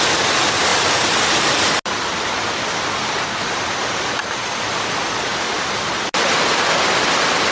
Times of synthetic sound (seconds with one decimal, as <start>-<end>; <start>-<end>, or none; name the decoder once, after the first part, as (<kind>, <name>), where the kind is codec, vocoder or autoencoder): none